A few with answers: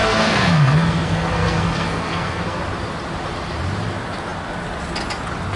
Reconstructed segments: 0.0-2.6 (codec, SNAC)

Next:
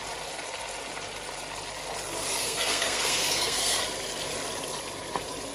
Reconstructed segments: 2.4-3.8 (codec, SNAC)

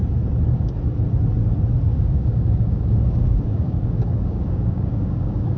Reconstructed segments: 1.9-5.6 (codec, DAC)